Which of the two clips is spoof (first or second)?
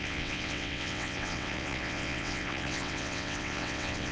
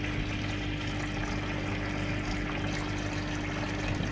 first